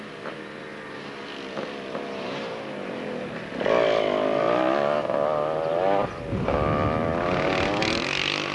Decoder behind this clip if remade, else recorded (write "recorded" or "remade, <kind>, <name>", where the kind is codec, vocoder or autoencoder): recorded